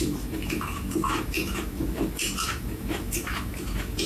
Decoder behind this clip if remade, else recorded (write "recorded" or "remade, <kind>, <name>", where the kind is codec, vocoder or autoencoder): remade, autoencoder, DAC-VAE